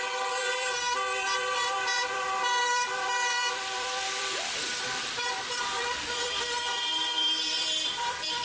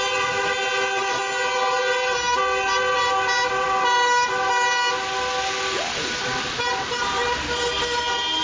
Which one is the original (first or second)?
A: second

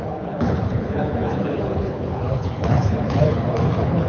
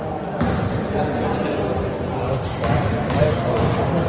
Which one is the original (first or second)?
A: second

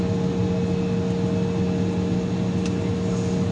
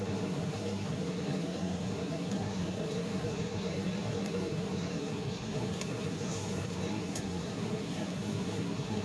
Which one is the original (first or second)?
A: first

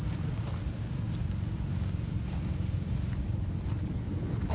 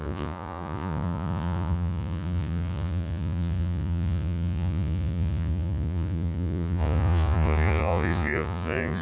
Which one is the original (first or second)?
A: first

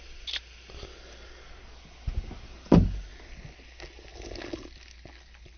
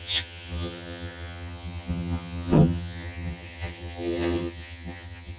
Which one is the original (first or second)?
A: first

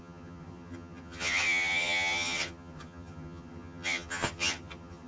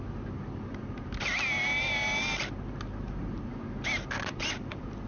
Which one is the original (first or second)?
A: second